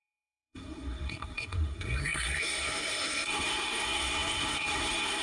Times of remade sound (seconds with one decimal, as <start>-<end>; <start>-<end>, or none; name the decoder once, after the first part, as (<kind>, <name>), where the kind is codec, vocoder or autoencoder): 0.0-5.2 (codec, SNAC)